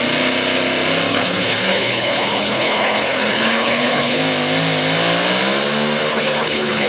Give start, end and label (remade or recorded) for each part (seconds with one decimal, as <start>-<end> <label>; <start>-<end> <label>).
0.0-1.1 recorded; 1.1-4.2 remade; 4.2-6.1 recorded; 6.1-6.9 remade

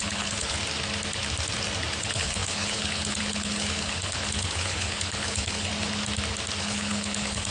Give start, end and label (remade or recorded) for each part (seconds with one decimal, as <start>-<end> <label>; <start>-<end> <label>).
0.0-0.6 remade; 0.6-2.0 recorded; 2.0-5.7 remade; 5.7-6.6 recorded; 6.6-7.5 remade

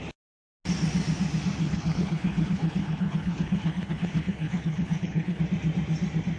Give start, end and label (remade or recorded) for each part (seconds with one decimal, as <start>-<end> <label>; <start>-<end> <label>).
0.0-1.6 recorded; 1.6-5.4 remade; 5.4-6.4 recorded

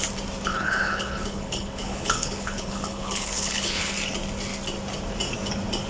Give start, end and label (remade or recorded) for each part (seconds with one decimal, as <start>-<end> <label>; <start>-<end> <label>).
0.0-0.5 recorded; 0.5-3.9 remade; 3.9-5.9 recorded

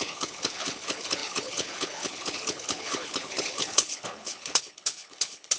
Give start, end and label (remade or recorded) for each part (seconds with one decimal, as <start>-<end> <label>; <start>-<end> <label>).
0.0-5.6 remade

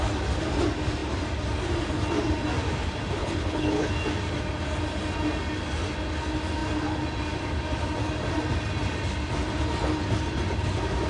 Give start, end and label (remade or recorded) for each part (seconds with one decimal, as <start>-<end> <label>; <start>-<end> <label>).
0.0-3.2 recorded; 3.2-3.9 remade; 3.9-11.1 recorded

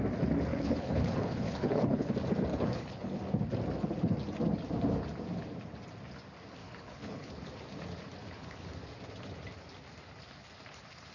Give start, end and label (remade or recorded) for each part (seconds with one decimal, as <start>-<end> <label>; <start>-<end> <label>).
0.0-0.5 recorded; 0.5-2.1 remade; 2.1-2.5 recorded; 2.5-3.2 remade; 3.2-6.6 recorded; 6.6-7.3 remade; 7.3-8.2 recorded; 8.2-8.7 remade; 8.7-11.1 recorded